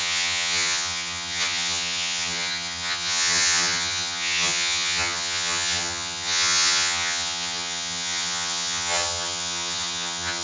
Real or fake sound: fake